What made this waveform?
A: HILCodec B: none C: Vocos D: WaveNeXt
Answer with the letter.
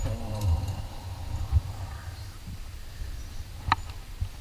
B